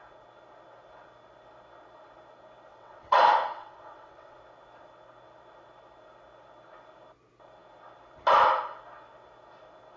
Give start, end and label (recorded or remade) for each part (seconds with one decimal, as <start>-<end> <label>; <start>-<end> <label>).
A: 0.0-2.7 recorded; 2.7-4.4 remade; 4.4-10.0 recorded